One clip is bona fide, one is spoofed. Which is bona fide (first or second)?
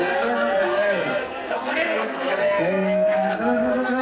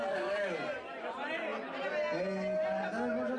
second